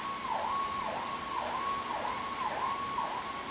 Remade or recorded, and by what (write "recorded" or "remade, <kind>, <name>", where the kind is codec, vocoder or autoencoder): recorded